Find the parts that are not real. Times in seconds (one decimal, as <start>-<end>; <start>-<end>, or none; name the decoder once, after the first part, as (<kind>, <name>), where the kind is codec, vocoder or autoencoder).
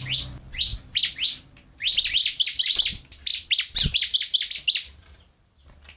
none